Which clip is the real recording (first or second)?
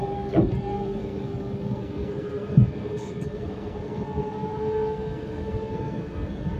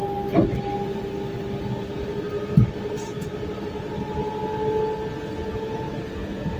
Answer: second